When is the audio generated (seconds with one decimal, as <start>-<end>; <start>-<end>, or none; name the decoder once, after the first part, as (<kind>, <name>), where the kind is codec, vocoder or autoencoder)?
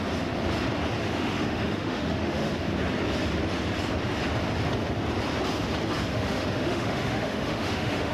1.0-2.5 (autoencoder, DAC-VAE); 6.1-8.1